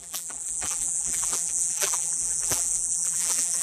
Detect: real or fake fake